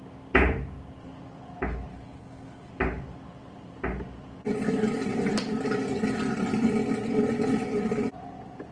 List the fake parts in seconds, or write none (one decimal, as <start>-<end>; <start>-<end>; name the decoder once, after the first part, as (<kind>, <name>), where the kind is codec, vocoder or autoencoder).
1.9-2.7 (codec, HILCodec)